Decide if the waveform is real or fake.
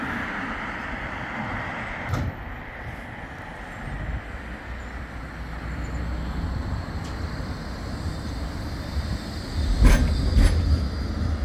real